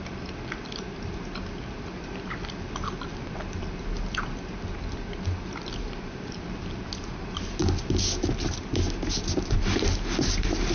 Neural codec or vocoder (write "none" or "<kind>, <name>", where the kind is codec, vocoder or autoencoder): none